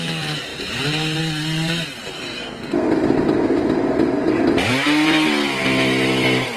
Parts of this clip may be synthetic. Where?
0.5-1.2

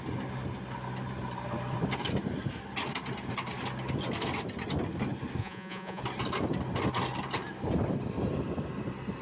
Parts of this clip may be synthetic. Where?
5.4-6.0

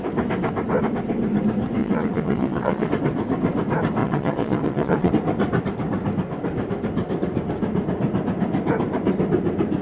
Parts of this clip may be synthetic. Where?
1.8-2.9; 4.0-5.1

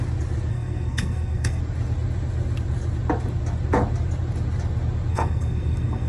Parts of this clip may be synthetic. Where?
0.5-1.6; 5.1-6.1

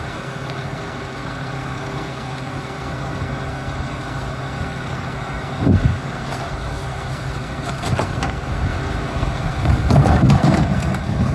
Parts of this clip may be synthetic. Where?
0.0-11.3

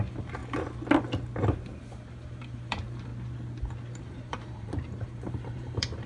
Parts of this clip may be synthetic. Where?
0.0-0.4; 1.8-3.1; 4.0-6.1

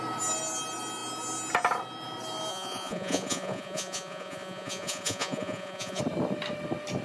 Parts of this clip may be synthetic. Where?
2.5-6.0